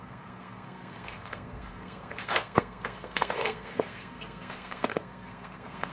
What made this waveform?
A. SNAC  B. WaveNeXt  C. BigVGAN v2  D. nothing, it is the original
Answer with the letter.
A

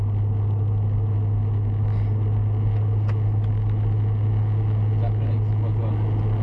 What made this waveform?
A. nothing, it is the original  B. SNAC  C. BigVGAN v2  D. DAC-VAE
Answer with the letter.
A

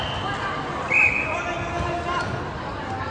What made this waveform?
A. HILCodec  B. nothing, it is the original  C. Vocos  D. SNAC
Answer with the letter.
B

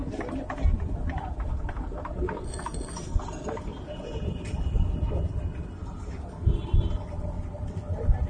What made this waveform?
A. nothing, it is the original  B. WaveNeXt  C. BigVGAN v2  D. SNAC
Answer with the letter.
A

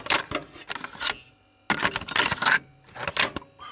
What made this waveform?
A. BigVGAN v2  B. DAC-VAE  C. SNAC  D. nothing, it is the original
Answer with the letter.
D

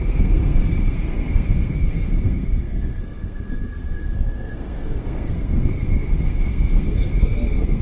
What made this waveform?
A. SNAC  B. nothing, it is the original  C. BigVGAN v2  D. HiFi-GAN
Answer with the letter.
A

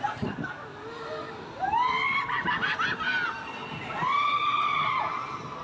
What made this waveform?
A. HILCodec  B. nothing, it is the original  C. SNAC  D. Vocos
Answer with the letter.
B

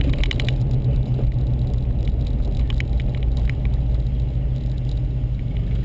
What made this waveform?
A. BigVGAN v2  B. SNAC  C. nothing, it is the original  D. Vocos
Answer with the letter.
C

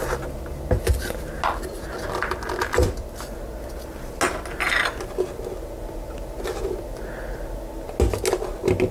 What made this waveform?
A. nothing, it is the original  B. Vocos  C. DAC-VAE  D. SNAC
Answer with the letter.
A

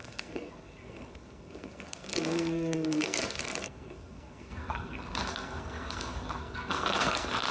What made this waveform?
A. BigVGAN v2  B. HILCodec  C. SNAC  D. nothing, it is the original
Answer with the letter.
C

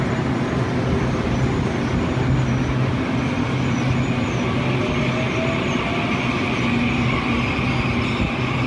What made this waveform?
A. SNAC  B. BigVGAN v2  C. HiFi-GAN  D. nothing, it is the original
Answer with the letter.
D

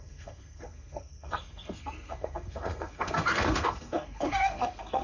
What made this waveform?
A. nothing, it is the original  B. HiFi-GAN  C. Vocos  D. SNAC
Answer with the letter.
D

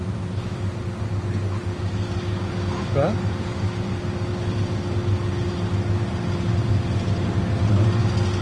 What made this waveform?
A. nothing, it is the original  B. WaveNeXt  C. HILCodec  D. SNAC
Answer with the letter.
A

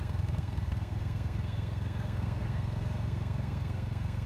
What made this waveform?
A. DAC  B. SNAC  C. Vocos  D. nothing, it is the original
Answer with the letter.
B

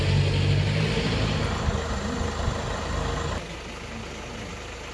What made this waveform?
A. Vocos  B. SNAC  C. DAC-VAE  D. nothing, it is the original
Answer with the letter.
D